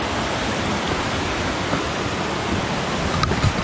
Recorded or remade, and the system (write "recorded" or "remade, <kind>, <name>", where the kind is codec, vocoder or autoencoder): recorded